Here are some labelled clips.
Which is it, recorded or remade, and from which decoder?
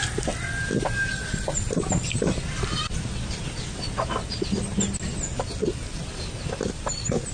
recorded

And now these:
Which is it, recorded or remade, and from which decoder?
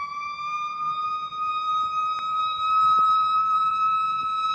remade, vocoder, BigVGAN v2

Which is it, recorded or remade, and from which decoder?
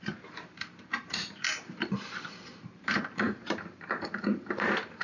remade, vocoder, BigVGAN v2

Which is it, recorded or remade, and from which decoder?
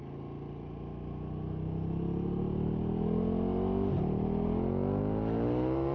recorded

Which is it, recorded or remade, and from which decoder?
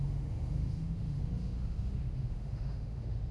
remade, autoencoder, DAC-VAE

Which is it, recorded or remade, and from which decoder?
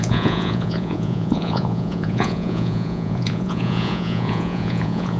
remade, vocoder, Vocos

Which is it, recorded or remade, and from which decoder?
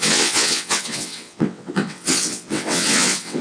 remade, vocoder, WaveNeXt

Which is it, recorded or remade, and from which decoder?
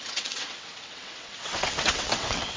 remade, vocoder, WaveNeXt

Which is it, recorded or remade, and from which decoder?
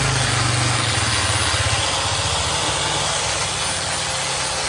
recorded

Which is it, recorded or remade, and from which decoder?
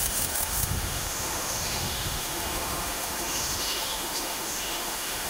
remade, autoencoder, DAC-VAE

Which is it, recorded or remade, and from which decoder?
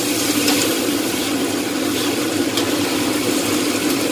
recorded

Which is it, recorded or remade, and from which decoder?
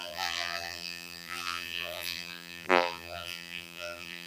remade, vocoder, BigVGAN v2